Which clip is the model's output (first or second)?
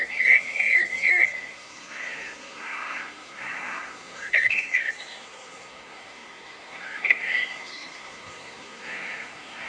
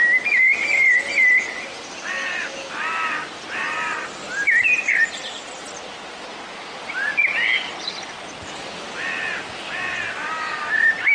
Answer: first